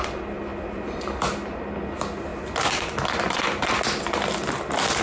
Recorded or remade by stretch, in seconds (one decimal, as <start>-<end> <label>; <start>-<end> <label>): 0.0-0.5 recorded; 0.5-1.2 remade; 1.2-5.0 recorded